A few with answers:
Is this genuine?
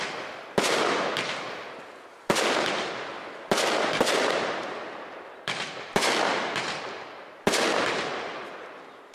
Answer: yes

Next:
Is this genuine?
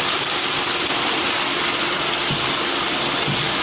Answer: yes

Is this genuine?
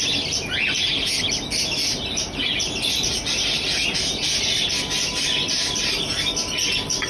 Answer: yes